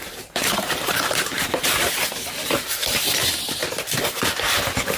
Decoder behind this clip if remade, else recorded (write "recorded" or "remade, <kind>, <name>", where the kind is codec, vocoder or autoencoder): remade, vocoder, BigVGAN v2